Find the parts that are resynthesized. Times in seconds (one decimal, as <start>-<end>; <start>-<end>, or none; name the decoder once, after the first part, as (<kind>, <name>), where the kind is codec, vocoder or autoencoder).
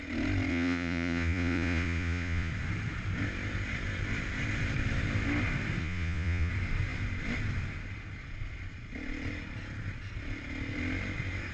0.5-2.5 (vocoder, Vocos); 5.8-6.5